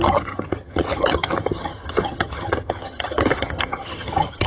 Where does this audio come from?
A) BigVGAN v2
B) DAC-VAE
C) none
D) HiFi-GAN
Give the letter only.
D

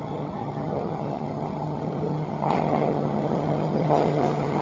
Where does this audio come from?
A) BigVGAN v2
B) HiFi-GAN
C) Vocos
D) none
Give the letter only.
B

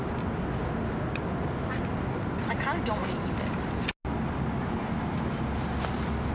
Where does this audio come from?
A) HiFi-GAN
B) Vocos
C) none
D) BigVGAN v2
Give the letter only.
C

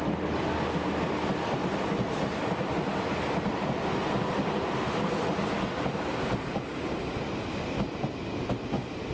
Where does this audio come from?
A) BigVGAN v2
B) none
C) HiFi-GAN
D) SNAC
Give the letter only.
B